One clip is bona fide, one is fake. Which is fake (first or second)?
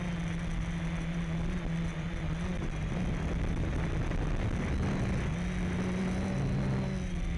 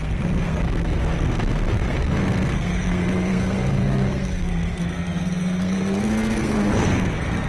second